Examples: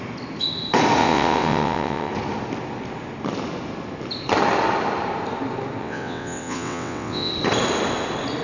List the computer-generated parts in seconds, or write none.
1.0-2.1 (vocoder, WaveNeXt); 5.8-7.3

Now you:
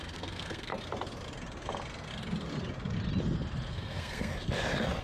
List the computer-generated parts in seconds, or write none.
0.0-0.7 (codec, SNAC); 3.7-4.3

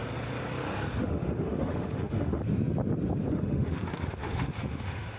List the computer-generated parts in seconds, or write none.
1.0-2.4 (autoencoder, DAC-VAE); 3.3-5.2

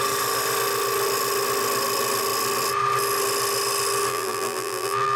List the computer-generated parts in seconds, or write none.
4.1-5.2 (vocoder, BigVGAN v2)